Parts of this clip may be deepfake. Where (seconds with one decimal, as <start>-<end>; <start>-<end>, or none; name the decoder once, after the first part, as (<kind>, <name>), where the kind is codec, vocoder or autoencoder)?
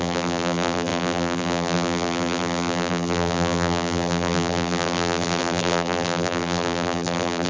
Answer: 0.0-7.5 (vocoder, BigVGAN v2)